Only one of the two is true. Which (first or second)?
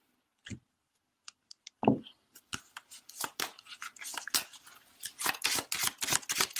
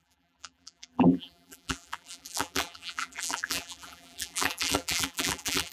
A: first